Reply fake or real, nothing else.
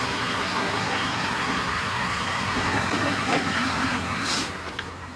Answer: fake